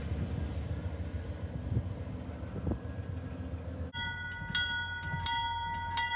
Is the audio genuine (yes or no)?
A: yes